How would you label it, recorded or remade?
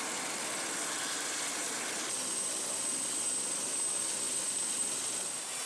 recorded